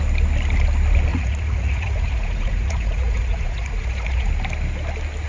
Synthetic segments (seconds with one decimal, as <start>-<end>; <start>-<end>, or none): 1.1-4.3